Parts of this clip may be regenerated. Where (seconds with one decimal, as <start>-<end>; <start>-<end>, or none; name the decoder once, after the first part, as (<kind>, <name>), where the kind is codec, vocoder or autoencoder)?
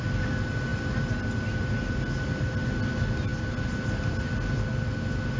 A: none